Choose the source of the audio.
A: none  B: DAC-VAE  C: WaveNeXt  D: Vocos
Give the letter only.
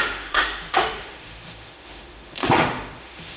B